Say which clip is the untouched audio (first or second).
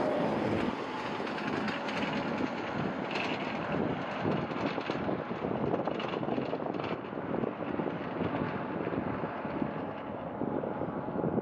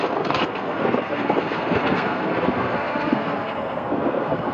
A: first